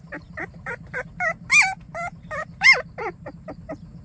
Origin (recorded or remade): remade